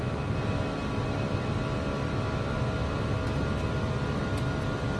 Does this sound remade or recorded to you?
recorded